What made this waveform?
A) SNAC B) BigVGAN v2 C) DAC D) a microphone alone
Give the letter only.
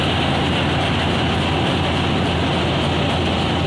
D